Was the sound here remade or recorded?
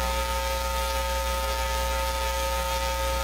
remade